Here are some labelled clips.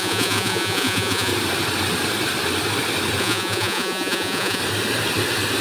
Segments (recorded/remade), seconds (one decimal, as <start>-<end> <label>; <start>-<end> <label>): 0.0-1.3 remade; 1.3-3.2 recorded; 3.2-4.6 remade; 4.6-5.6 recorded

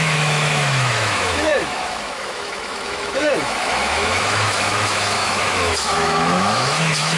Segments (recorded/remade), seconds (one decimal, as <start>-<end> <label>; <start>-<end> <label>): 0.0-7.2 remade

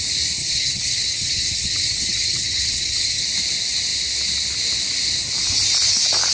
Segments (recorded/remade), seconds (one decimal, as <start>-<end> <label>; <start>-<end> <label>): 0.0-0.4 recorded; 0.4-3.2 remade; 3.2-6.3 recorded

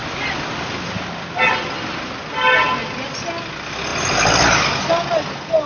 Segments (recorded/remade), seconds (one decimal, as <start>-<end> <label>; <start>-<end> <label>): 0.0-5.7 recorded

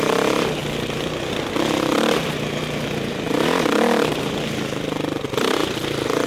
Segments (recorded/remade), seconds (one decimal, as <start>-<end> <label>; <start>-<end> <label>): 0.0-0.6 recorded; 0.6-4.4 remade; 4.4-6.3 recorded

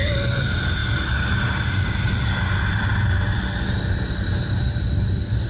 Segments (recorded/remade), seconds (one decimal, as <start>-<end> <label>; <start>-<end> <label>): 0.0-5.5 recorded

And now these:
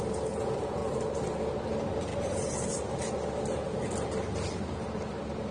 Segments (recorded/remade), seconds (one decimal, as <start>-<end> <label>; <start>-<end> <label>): 0.0-5.5 recorded

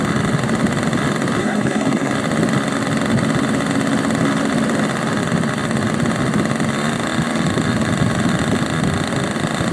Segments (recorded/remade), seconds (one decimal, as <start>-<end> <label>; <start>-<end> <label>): 0.0-1.4 recorded; 1.4-2.1 remade; 2.1-9.7 recorded